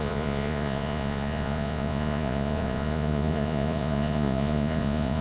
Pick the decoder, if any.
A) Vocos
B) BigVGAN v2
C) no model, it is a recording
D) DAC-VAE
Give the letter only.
A